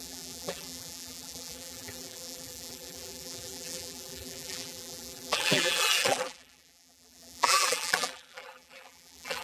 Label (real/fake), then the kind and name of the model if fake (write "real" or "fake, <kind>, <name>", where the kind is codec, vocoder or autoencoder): fake, vocoder, BigVGAN v2